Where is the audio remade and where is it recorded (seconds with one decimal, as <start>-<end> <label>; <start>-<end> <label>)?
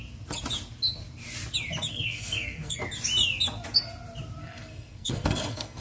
0.0-1.9 recorded; 1.9-2.8 remade; 2.8-4.4 recorded; 4.4-5.8 remade